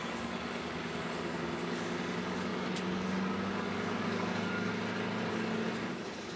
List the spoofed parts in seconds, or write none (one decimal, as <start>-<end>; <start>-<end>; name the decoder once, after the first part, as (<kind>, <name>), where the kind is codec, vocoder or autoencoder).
0.0-4.7 (codec, DAC); 5.3-6.4